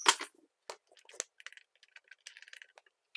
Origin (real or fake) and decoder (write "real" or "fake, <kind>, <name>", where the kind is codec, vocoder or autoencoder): real